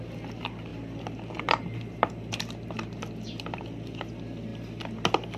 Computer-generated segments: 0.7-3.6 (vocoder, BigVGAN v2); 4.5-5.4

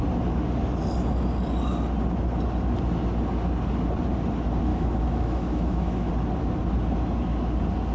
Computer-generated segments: 4.7-6.1 (autoencoder, DAC-VAE)

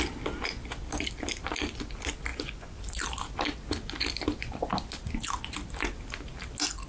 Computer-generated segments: 2.3-2.8 (vocoder, Vocos)

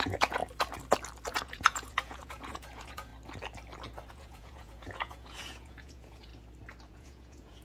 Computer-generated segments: 0.0-0.4 (vocoder, Vocos); 1.3-3.1; 4.1-6.3; 6.9-7.6